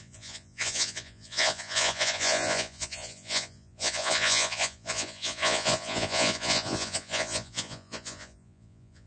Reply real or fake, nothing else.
fake